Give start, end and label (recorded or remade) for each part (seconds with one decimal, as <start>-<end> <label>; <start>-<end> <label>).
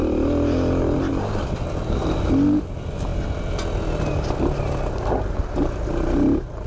0.0-6.7 recorded